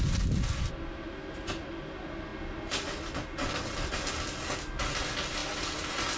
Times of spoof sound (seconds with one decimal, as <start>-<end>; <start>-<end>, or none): none